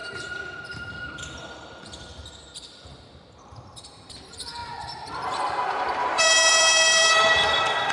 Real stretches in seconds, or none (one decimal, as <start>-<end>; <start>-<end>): none

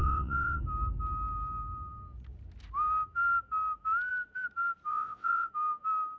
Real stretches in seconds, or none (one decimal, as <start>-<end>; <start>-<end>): 0.6-4.9; 5.5-6.2

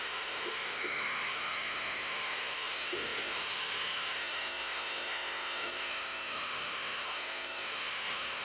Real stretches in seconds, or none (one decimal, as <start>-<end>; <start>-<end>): none

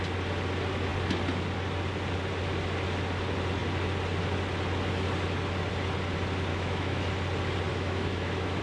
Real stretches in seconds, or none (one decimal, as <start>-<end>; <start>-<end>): 0.0-6.5; 7.1-7.7

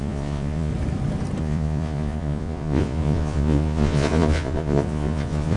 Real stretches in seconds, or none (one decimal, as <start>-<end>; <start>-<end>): 0.7-1.4

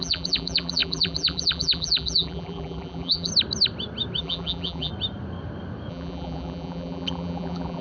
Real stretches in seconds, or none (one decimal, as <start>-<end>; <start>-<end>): 3.3-4.2; 4.9-5.9